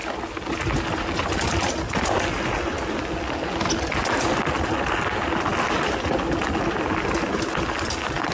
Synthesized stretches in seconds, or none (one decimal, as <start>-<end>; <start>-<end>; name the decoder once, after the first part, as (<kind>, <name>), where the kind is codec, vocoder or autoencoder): none